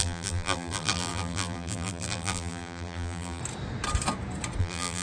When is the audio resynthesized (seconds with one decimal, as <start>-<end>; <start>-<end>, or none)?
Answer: 0.0-3.4; 4.6-5.0